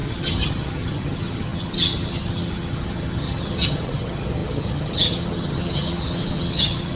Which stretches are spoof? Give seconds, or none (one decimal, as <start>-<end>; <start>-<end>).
0.0-7.0